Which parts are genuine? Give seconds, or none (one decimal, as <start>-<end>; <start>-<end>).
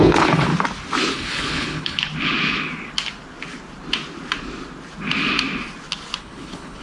0.5-1.1; 2.1-6.2